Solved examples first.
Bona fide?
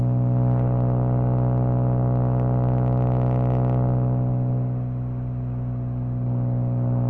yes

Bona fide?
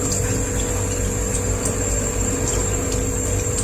yes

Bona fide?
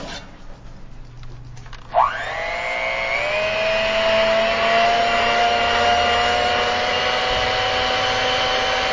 yes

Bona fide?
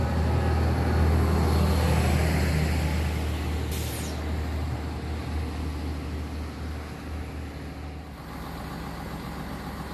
yes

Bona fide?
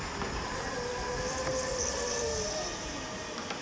yes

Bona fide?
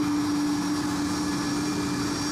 yes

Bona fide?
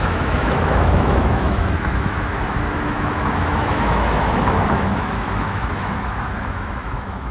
no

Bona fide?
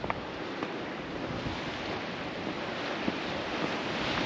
no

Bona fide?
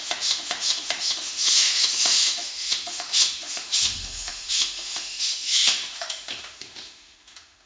no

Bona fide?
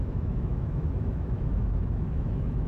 no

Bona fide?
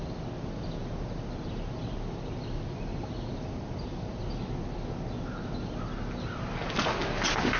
yes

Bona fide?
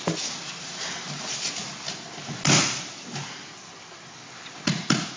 yes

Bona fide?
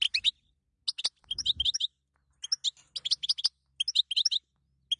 yes